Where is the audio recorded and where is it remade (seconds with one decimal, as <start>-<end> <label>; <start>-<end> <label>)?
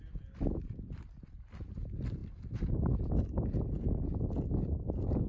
0.0-5.3 recorded